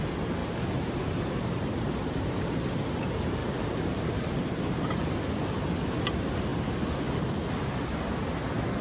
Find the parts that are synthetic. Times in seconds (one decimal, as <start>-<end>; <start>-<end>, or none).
0.4-3.0; 3.4-5.0

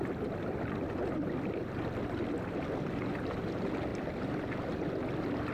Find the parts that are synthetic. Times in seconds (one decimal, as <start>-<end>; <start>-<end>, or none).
3.9-4.9

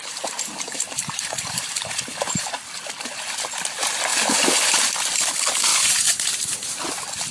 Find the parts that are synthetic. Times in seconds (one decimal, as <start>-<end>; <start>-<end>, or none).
0.0-2.5; 5.7-6.8